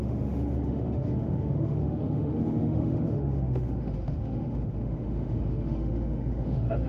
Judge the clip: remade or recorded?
remade